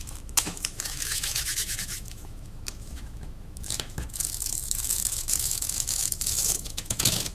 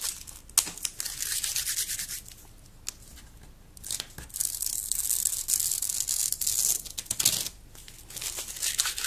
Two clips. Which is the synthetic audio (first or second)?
first